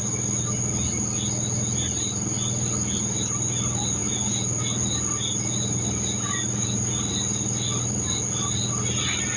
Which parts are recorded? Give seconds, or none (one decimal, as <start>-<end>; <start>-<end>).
0.0-9.4